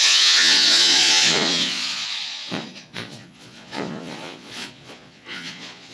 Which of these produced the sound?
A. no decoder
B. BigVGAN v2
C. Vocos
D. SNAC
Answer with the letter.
C